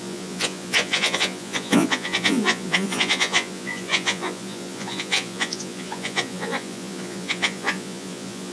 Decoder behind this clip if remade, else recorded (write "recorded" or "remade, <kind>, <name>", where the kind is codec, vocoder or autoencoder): remade, vocoder, Vocos